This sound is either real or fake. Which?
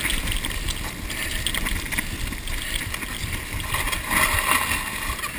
real